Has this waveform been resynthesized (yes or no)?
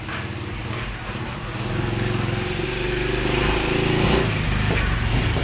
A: no